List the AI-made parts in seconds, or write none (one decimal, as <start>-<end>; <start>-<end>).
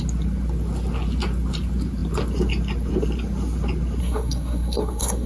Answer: 4.0-5.3